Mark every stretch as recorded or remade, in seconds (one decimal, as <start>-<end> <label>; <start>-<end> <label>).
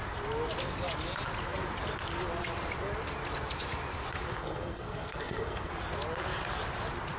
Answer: 0.0-4.4 recorded; 4.4-5.7 remade; 5.7-7.2 recorded